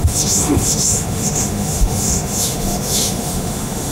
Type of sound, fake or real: fake